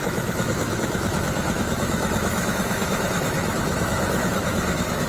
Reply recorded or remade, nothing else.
remade